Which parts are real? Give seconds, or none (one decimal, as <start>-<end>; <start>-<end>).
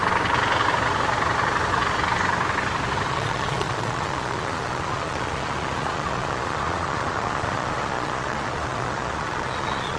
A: 0.0-3.1